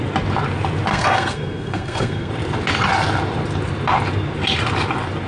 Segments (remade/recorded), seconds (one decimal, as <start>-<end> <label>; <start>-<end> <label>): 0.0-0.9 recorded; 0.9-2.3 remade; 2.3-5.3 recorded